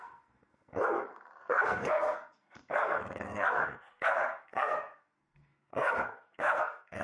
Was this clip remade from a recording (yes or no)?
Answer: yes